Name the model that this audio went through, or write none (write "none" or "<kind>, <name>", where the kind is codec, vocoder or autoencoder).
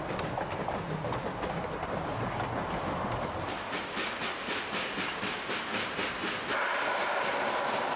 none